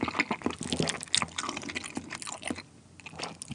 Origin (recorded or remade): recorded